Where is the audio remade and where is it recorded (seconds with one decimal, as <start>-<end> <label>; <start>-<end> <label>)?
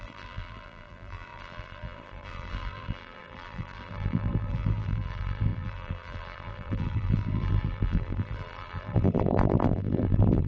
0.0-10.5 remade